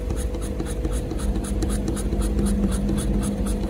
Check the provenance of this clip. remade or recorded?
recorded